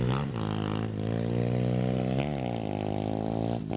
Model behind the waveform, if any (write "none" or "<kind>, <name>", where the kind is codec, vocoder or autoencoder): none